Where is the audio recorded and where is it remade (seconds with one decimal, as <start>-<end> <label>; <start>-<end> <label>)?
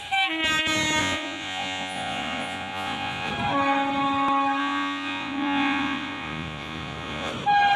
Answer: 0.0-1.0 recorded; 1.0-3.3 remade; 3.3-4.6 recorded; 4.6-7.3 remade; 7.3-7.8 recorded